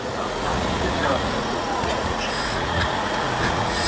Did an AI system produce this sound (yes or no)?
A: yes